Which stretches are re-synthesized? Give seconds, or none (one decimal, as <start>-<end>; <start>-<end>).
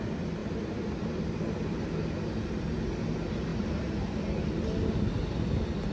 3.5-4.4